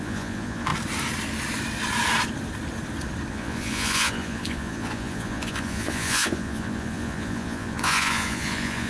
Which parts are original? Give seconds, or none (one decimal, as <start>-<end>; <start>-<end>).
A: 0.7-3.3